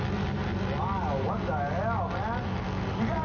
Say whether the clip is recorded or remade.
recorded